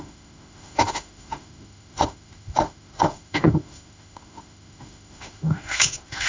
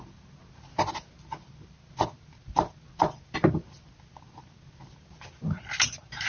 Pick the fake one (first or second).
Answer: first